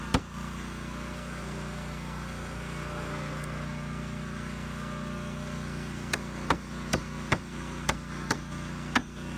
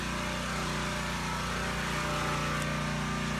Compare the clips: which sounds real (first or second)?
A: second